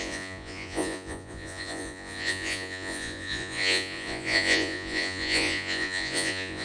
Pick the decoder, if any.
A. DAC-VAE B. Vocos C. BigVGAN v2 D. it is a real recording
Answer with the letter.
B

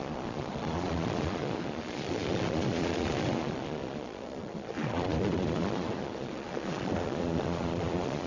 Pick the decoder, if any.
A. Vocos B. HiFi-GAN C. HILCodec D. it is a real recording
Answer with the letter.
A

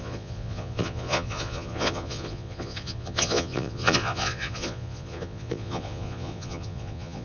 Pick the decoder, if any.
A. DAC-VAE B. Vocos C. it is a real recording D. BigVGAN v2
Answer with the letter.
B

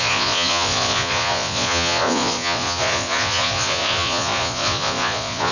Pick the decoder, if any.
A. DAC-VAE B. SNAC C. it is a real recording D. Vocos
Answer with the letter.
D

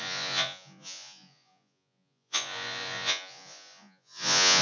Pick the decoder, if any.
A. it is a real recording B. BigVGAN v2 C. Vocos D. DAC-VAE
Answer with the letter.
C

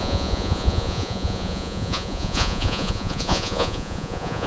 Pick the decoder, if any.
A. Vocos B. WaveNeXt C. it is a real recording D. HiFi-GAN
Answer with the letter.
A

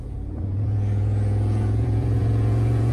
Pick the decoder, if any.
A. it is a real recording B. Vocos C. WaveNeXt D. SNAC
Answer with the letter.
B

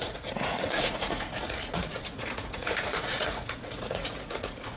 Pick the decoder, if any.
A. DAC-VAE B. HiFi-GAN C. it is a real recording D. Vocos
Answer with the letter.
D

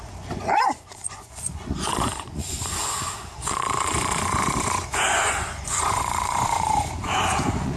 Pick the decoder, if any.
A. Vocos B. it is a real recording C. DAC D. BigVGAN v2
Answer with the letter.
A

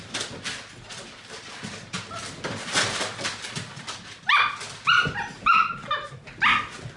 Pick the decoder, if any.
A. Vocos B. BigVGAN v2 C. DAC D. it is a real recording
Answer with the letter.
D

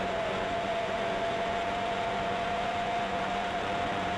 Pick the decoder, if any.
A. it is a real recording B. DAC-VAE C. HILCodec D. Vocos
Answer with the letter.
D